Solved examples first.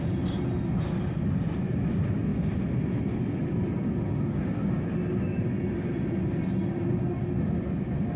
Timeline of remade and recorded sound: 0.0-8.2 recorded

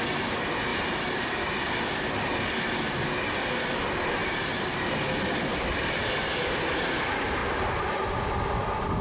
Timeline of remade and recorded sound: 0.0-4.2 recorded; 4.2-4.8 remade; 4.8-7.4 recorded; 7.4-8.1 remade; 8.1-9.0 recorded

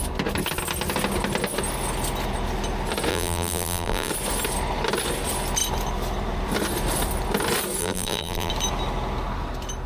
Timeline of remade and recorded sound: 0.0-3.1 recorded; 3.1-4.1 remade; 4.1-7.8 recorded; 7.8-8.5 remade; 8.5-9.9 recorded

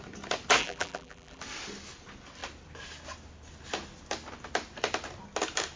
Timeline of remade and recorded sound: 0.0-0.6 recorded; 0.6-1.4 remade; 1.4-5.8 recorded

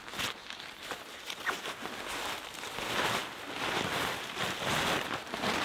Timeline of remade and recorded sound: 0.0-5.6 recorded